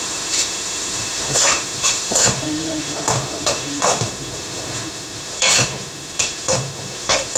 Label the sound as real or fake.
fake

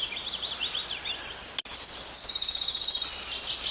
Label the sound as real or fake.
real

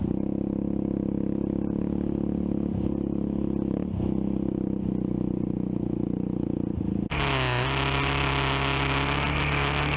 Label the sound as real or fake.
real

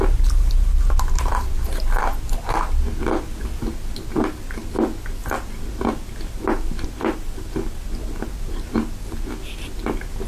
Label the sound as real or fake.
real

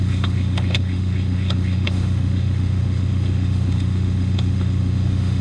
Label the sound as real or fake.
fake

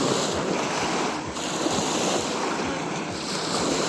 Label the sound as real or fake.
real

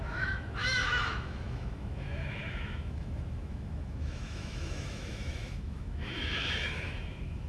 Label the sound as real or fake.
fake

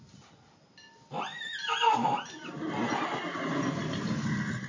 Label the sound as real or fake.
real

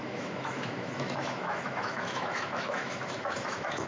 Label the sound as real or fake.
fake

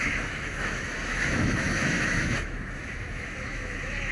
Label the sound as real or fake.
fake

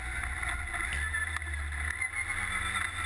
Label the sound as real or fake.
real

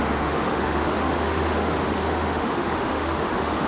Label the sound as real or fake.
fake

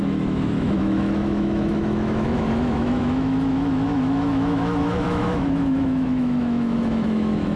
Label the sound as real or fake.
fake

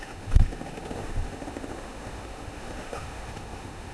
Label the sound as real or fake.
fake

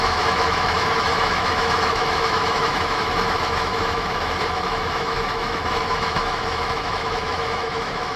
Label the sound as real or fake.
fake